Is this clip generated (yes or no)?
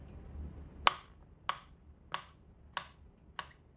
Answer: no